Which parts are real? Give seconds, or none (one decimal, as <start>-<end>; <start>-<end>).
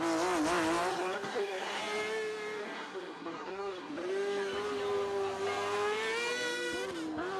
0.0-0.9; 1.8-2.6; 3.9-7.4